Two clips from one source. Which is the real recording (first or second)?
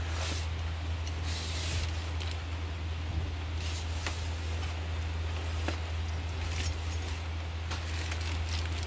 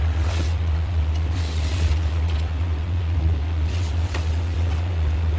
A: first